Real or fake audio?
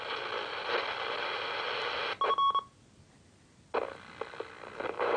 real